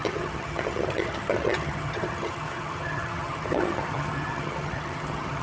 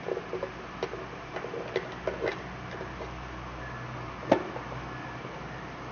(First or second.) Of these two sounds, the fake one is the first